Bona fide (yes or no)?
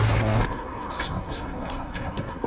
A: no